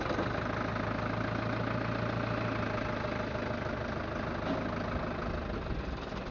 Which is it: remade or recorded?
recorded